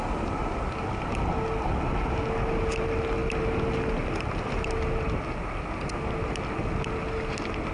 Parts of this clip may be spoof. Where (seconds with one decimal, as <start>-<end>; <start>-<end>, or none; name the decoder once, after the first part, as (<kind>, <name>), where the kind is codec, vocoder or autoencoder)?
none

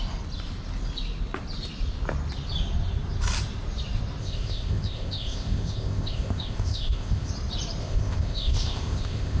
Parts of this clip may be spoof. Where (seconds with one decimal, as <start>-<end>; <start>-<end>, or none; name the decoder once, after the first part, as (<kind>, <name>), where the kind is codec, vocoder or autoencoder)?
4.2-7.3 (codec, ZipCodec); 7.8-9.4

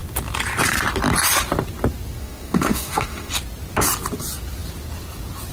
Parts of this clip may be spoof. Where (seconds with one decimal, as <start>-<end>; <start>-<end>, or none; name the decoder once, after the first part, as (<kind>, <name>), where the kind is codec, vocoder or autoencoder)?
2.2-3.3 (autoencoder, DAC-VAE)

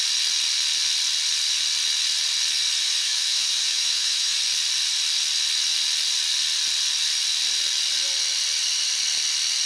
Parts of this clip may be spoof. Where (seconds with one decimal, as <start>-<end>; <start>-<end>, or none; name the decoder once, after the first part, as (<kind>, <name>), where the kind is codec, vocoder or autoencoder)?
2.8-4.4 (autoencoder, DAC-VAE)

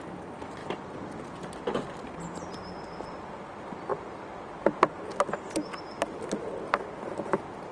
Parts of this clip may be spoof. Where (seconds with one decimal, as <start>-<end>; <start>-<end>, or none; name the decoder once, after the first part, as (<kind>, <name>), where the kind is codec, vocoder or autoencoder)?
none